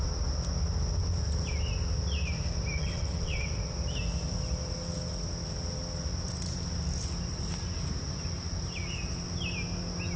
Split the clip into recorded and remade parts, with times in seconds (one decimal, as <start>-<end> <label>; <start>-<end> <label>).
0.0-2.8 recorded; 2.8-3.5 remade; 3.5-10.2 recorded